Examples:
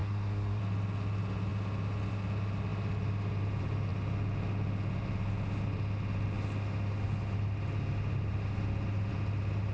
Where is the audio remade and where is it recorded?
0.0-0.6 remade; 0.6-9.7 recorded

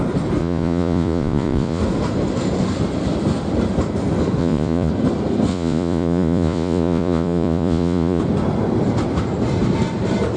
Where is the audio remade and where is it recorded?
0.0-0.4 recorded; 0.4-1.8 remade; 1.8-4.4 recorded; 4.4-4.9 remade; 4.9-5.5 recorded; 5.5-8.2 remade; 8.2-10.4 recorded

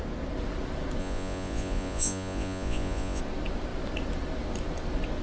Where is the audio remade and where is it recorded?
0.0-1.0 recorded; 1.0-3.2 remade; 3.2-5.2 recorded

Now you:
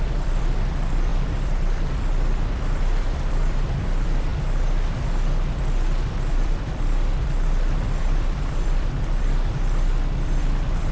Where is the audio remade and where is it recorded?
0.0-4.3 remade; 4.3-6.3 recorded; 6.3-10.9 remade

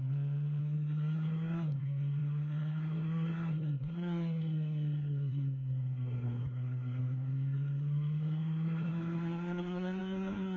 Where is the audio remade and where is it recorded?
0.0-0.6 recorded; 0.6-10.6 remade

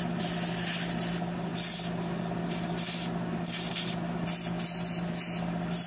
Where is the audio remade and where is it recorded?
0.0-5.9 recorded

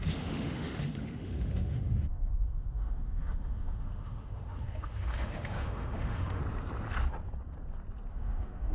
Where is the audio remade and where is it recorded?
0.0-6.4 remade; 6.4-8.1 recorded; 8.1-8.7 remade

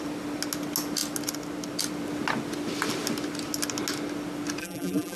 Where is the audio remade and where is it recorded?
0.0-4.6 recorded; 4.6-5.2 remade